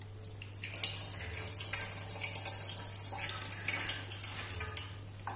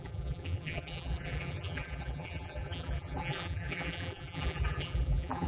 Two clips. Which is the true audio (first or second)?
first